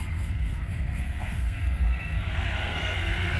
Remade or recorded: remade